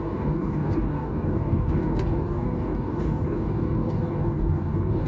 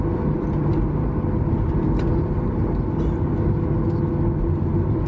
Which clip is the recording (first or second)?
second